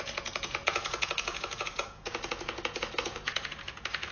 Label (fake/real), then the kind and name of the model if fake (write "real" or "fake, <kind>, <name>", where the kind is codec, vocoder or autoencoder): fake, vocoder, Vocos